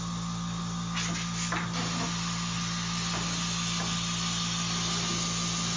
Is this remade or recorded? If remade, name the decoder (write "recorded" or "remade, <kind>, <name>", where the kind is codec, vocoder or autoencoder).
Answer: recorded